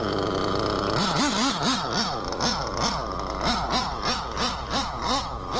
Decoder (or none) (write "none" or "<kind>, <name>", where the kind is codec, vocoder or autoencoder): none